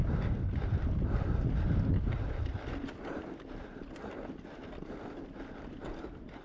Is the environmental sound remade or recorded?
recorded